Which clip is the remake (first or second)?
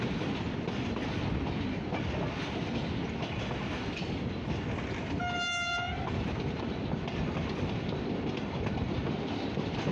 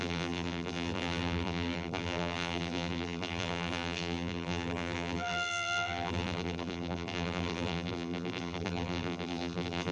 second